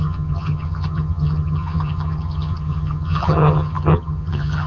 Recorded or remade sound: remade